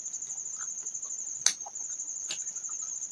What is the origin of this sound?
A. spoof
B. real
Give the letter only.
B